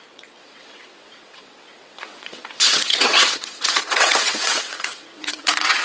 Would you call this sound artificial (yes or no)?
yes